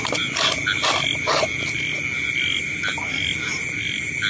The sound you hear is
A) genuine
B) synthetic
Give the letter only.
A